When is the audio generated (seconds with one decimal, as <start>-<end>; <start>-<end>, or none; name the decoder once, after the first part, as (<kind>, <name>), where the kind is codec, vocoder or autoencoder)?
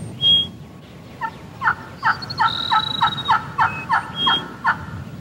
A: none